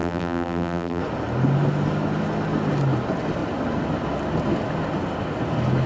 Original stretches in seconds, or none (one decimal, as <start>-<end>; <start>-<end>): 1.0-5.9